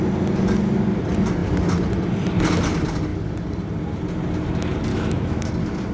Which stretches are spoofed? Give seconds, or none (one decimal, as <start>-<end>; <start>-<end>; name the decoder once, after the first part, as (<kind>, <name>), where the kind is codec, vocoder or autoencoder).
4.9-5.5 (autoencoder, DAC-VAE)